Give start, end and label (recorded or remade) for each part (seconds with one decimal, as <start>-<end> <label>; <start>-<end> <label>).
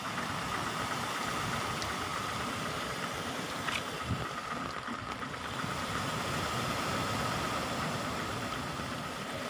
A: 0.0-9.5 recorded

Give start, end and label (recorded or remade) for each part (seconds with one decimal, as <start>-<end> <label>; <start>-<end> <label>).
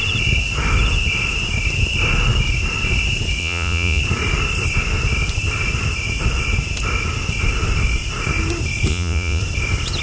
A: 0.0-3.4 recorded; 3.4-4.0 remade; 4.0-8.9 recorded; 8.9-9.4 remade; 9.4-10.0 recorded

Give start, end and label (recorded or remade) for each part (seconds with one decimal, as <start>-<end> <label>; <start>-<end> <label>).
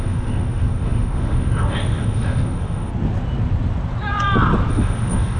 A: 0.0-2.9 remade; 2.9-4.7 recorded; 4.7-5.4 remade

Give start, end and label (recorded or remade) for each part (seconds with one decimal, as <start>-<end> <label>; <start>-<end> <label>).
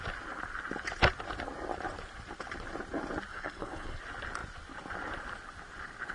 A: 0.0-3.3 recorded; 3.3-4.0 remade; 4.0-6.1 recorded